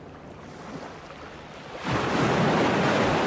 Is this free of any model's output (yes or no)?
yes